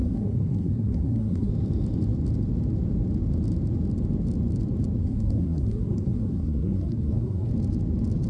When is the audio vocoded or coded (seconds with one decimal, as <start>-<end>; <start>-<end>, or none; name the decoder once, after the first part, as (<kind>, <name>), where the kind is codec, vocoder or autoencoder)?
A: 0.0-1.5 (codec, SNAC); 5.0-7.5